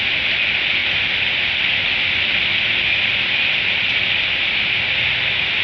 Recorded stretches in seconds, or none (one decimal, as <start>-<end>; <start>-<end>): 0.0-5.6